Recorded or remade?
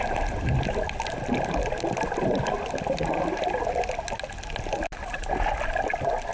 recorded